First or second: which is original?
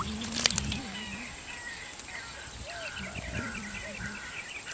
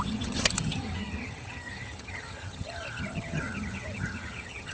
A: first